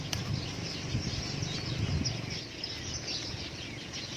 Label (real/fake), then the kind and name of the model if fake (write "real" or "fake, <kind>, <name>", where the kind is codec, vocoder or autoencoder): real